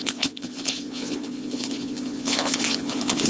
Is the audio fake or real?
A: fake